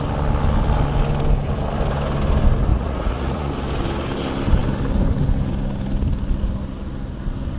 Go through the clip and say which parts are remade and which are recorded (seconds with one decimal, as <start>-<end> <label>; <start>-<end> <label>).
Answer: 0.0-2.7 recorded; 2.7-3.5 remade; 3.5-7.6 recorded